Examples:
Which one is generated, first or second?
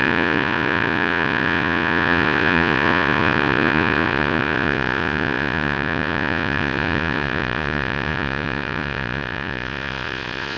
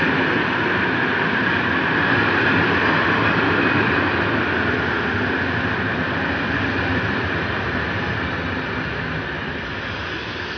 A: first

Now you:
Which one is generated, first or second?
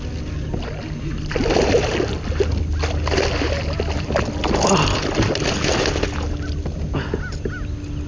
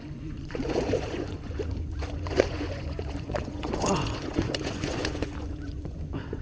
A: second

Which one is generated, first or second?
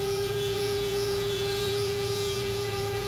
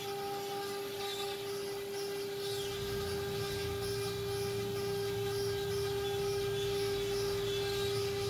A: first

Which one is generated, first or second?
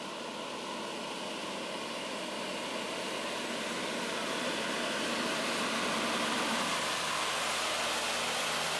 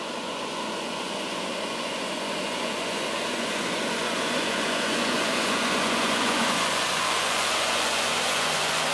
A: second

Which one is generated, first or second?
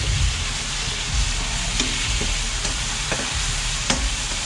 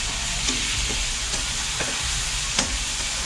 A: second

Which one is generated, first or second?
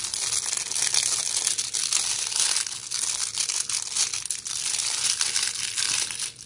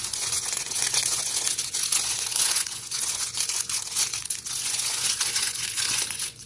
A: second